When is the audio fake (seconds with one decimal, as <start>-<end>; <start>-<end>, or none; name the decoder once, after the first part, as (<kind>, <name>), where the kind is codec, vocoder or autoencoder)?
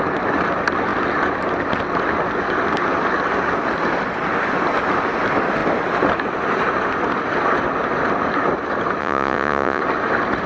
9.0-9.8 (vocoder, Vocos)